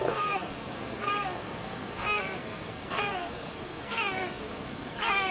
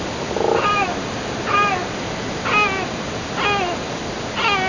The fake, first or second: first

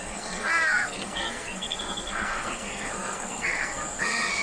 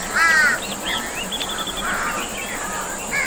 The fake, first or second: first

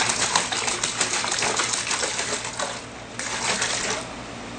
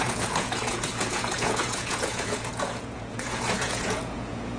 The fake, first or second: second